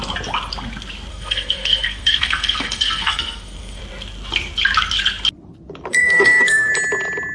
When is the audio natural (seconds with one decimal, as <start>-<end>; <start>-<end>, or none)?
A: 0.0-1.1; 3.8-5.9; 6.7-7.3